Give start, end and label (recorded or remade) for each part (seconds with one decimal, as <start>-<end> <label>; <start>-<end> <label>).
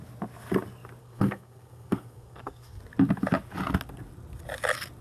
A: 0.0-1.0 recorded; 1.0-2.8 remade; 2.8-5.0 recorded